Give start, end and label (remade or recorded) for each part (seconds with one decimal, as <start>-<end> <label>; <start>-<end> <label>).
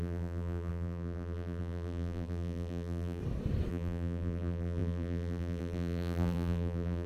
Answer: 0.0-3.2 remade; 3.2-3.7 recorded; 3.7-7.1 remade